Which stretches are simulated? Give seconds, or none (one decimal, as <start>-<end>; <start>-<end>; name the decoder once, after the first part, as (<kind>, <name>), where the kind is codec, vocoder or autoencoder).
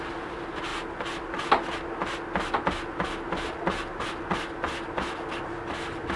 none